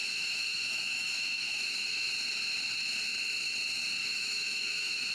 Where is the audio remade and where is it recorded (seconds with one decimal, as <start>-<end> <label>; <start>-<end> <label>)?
0.0-2.1 remade; 2.1-4.0 recorded; 4.0-5.1 remade